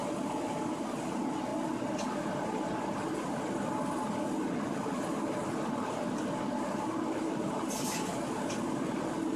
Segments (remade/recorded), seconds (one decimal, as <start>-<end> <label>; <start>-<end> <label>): 0.0-9.4 recorded